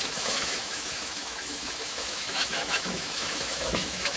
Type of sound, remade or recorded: remade